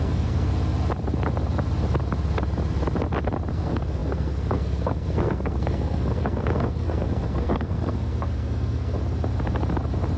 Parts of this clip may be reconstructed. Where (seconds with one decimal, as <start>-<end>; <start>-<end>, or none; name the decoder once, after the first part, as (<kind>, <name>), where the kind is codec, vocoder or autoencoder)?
0.0-0.5 (codec, SNAC); 3.5-9.0